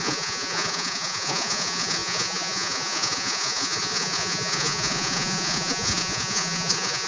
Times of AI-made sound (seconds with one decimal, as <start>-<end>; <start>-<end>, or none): 0.0-7.1